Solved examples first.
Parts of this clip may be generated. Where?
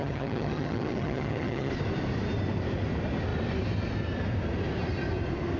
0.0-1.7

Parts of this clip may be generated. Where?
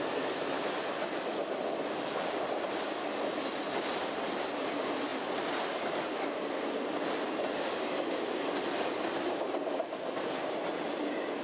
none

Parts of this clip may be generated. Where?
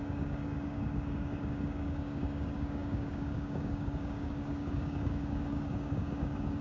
0.0-6.6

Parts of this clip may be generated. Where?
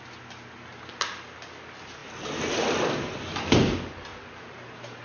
4.1-5.0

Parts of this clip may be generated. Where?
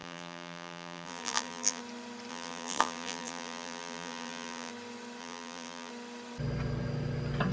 0.0-1.8; 2.3-4.7; 5.2-5.9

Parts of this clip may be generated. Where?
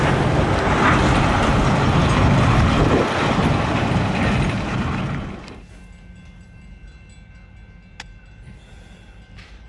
none